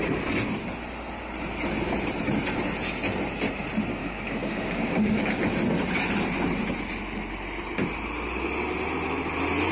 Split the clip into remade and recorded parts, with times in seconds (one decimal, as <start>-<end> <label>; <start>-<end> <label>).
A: 0.0-4.0 recorded; 4.0-5.4 remade; 5.4-9.7 recorded